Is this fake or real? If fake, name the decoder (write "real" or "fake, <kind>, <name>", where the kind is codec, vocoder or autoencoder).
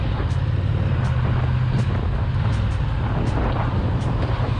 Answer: real